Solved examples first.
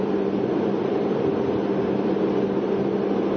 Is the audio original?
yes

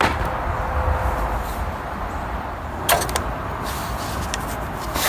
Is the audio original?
yes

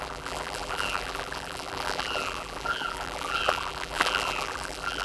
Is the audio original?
no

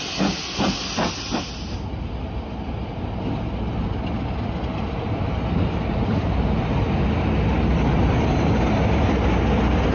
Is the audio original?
yes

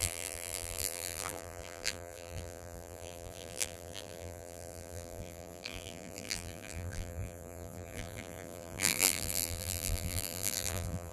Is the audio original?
no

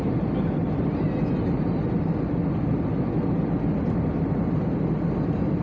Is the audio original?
yes